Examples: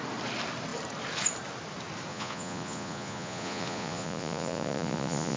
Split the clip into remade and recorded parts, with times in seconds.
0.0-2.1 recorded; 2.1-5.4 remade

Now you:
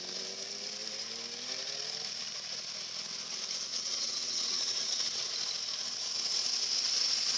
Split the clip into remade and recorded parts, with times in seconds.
0.0-3.7 recorded; 3.7-5.3 remade; 5.3-7.4 recorded

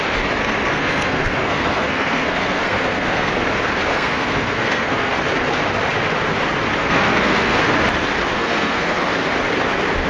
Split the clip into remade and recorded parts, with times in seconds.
0.0-0.4 recorded; 0.4-3.3 remade; 3.3-3.9 recorded; 3.9-5.1 remade; 5.1-6.8 recorded; 6.8-7.6 remade; 7.6-8.3 recorded; 8.3-9.0 remade; 9.0-10.1 recorded

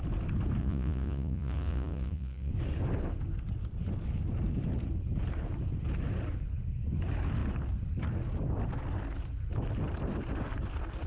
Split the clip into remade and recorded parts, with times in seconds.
0.0-0.6 recorded; 0.6-2.5 remade; 2.5-11.1 recorded

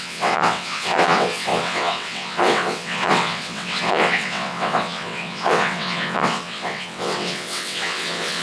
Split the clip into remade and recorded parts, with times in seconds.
0.0-8.4 remade

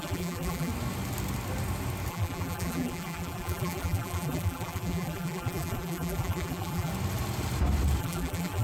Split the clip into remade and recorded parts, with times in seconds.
0.0-0.7 remade; 0.7-2.1 recorded; 2.1-6.9 remade; 6.9-8.0 recorded; 8.0-8.6 remade

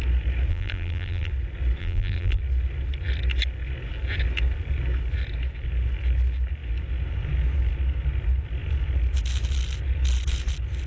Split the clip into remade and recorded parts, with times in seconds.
0.0-0.5 recorded; 0.5-1.3 remade; 1.3-1.8 recorded; 1.8-2.4 remade; 2.4-10.9 recorded